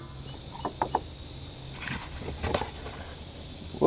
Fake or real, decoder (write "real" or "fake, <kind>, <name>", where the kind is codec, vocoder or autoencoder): real